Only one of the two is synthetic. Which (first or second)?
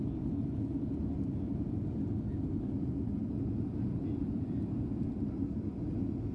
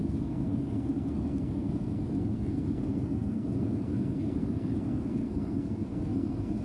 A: second